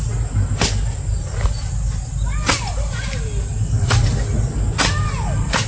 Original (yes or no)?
yes